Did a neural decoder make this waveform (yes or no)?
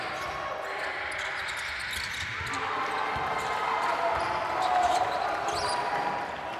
no